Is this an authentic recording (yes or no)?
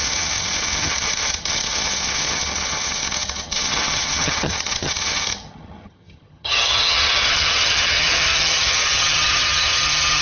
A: no